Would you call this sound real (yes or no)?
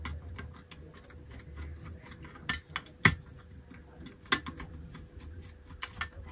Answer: yes